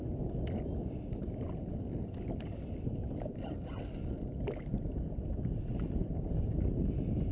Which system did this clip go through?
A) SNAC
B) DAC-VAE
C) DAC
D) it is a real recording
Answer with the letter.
D